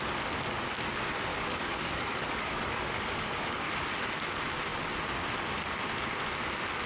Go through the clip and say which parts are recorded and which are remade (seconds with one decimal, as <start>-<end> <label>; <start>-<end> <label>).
0.0-1.3 recorded; 1.3-3.7 remade; 3.7-6.9 recorded

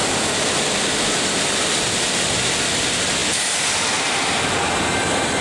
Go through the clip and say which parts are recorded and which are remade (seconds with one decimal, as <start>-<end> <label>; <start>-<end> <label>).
0.0-2.8 recorded; 2.8-3.2 remade; 3.2-4.4 recorded; 4.4-5.4 remade

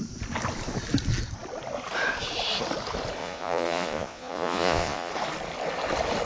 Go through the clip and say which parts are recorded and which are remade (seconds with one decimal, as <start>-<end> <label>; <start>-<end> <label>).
0.0-3.2 recorded; 3.2-5.1 remade; 5.1-6.3 recorded

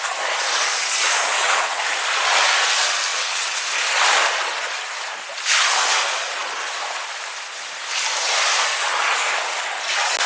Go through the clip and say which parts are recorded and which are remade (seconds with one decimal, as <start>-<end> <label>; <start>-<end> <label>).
0.0-1.3 recorded; 1.3-1.8 remade; 1.8-3.1 recorded; 3.1-3.6 remade; 3.6-10.3 recorded

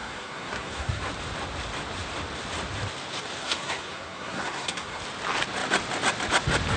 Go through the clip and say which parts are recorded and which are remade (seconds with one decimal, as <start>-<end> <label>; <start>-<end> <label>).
0.0-1.0 remade; 1.0-3.4 recorded; 3.4-5.0 remade; 5.0-6.8 recorded

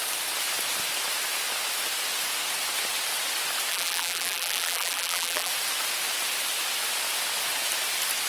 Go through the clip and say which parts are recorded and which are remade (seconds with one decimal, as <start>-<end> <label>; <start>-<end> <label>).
0.0-3.7 recorded; 3.7-5.5 remade; 5.5-8.3 recorded